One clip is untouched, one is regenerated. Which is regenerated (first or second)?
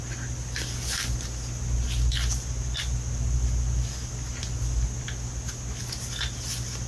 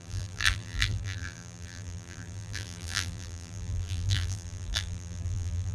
second